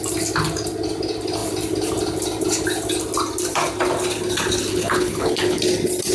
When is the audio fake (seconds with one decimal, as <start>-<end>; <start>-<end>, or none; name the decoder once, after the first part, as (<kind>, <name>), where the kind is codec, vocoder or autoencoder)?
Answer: 4.7-5.6 (codec, HILCodec)